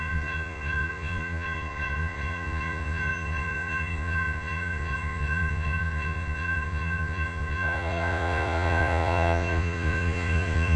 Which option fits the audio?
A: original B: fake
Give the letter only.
B